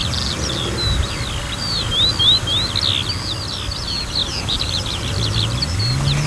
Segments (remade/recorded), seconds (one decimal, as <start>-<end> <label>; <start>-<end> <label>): 0.0-4.2 recorded; 4.2-5.1 remade; 5.1-6.3 recorded